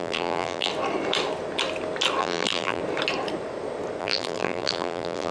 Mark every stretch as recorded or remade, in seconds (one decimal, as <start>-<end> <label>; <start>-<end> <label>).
0.0-0.7 remade; 0.7-2.2 recorded; 2.2-2.8 remade; 2.8-4.0 recorded; 4.0-5.3 remade